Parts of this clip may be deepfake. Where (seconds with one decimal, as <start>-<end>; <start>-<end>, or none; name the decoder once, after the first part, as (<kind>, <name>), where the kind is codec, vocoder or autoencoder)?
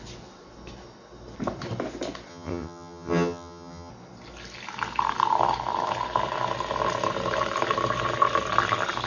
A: 2.3-3.9 (vocoder, HiFi-GAN)